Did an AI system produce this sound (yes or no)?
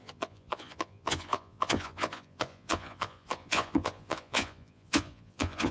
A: yes